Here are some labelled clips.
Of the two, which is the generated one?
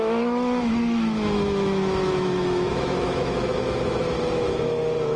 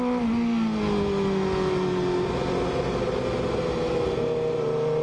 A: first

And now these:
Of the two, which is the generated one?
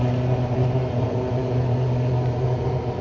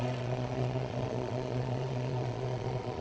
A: second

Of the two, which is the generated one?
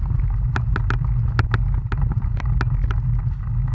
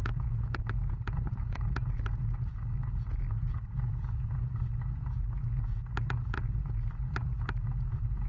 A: second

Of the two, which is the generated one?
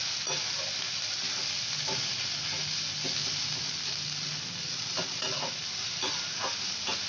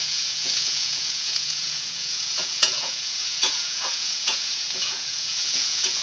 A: second